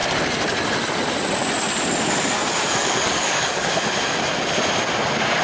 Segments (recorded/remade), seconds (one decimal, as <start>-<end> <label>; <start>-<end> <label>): 0.0-2.8 recorded; 2.8-3.7 remade; 3.7-5.4 recorded